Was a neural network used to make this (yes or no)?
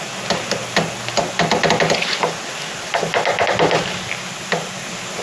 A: no